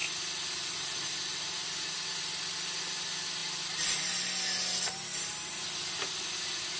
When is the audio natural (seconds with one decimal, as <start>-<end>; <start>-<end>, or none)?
0.0-6.8

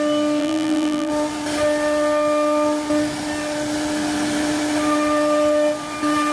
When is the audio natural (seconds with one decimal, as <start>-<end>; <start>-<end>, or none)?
0.0-0.4; 1.1-6.3